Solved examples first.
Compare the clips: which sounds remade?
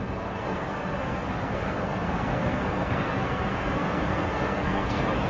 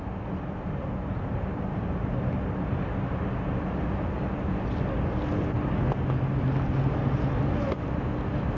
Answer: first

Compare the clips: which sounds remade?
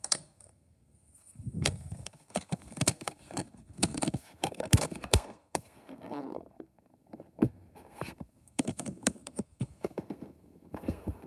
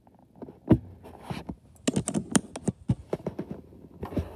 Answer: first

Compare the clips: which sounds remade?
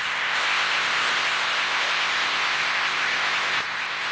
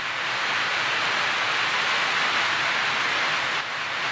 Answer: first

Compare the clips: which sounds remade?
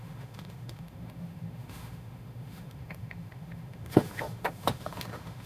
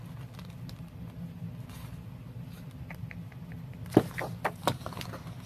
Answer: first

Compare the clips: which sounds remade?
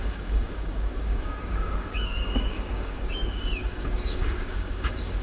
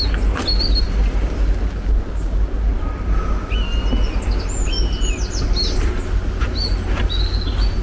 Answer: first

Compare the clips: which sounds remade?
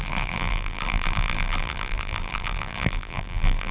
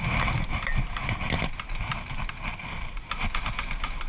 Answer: first